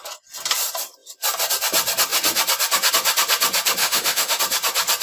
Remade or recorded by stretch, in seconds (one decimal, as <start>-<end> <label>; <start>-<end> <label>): 0.0-3.8 recorded; 3.8-4.4 remade; 4.4-5.0 recorded